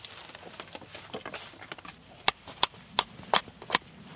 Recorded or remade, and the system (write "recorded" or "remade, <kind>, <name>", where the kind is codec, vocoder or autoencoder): recorded